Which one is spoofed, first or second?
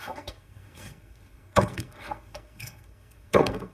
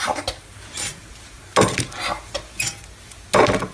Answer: first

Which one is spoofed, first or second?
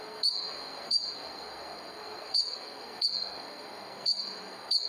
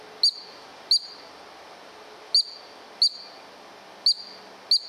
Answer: first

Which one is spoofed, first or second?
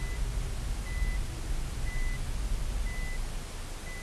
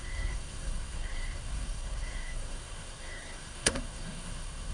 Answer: second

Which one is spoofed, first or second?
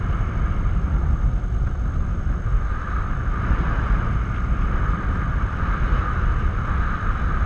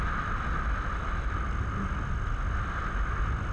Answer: first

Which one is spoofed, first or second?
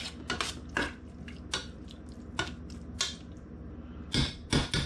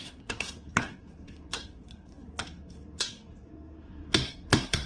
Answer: second